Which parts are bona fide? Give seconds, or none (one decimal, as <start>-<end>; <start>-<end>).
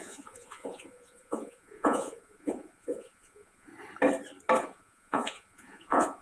3.7-4.6